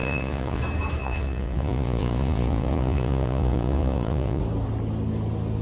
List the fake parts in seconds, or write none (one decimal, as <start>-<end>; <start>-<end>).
0.0-0.6; 1.0-4.4